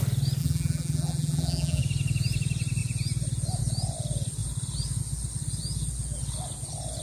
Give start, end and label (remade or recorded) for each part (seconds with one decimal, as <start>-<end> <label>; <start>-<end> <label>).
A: 0.0-0.4 recorded; 0.4-1.8 remade; 1.8-7.0 recorded